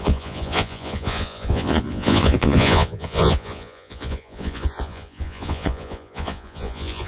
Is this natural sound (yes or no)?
no